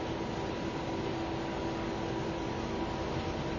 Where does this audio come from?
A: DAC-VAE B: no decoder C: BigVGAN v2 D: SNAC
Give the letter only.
B